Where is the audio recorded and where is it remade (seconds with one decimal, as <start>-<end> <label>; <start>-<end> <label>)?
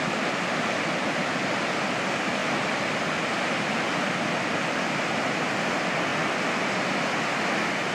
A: 0.0-7.9 recorded